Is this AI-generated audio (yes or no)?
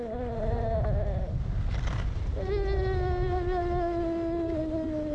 no